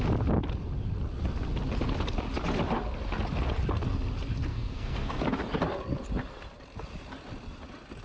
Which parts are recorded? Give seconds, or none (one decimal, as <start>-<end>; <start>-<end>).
0.0-4.5; 5.2-8.0